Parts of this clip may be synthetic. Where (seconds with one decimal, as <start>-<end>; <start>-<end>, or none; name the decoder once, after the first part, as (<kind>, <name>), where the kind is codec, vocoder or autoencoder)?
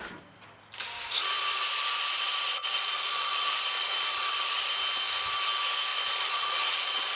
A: 1.2-4.7 (vocoder, Vocos); 5.9-7.2